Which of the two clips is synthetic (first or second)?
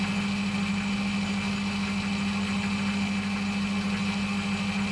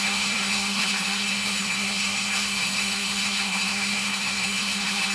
second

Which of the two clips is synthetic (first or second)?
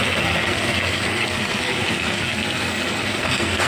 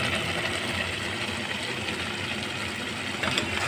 first